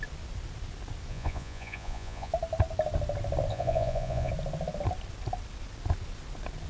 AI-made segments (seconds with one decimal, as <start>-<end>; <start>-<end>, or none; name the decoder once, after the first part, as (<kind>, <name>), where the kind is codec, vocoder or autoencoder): 1.1-2.3 (vocoder, Vocos); 3.5-4.3